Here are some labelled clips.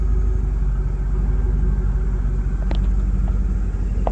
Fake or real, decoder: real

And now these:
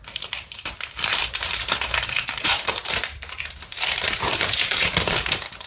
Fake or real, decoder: fake, vocoder, BigVGAN v2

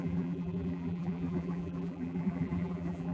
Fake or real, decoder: fake, vocoder, BigVGAN v2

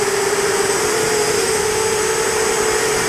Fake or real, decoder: fake, vocoder, BigVGAN v2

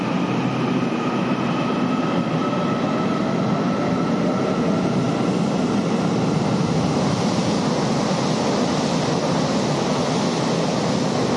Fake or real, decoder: real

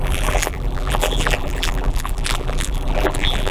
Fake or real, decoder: fake, vocoder, BigVGAN v2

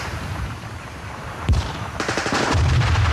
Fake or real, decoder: fake, vocoder, BigVGAN v2